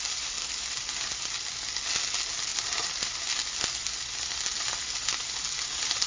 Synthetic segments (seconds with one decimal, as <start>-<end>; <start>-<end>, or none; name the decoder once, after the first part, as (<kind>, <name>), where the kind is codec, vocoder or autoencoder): 2.5-3.4 (vocoder, BigVGAN v2)

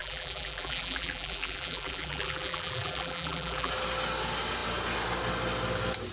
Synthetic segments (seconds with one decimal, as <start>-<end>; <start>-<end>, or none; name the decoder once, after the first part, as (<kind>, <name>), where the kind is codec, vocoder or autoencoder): 0.0-3.7 (vocoder, BigVGAN v2)

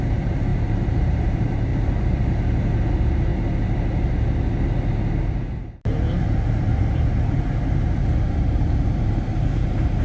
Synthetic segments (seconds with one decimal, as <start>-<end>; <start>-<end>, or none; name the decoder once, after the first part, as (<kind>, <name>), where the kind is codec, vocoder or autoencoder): 0.0-1.7 (vocoder, BigVGAN v2); 2.9-3.3; 5.1-10.0

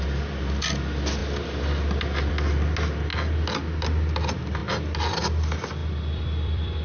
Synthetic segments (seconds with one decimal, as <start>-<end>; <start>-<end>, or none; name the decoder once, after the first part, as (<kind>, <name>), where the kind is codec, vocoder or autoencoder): 5.8-6.8 (vocoder, BigVGAN v2)

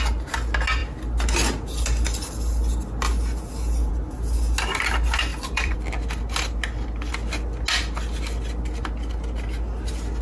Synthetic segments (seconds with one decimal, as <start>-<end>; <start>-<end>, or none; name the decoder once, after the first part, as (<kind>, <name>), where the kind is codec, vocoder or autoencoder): 5.3-5.8 (vocoder, BigVGAN v2)

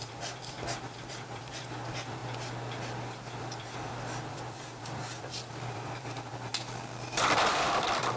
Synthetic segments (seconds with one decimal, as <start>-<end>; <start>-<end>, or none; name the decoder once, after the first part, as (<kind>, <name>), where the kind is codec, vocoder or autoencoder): 0.0-2.2 (vocoder, BigVGAN v2); 3.4-6.5; 7.5-8.2

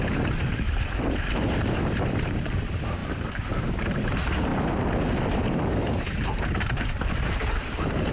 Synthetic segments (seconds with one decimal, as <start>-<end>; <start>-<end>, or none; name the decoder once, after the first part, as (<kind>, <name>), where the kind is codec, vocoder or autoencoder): 0.0-3.0 (vocoder, BigVGAN v2); 3.7-4.5; 5.5-8.1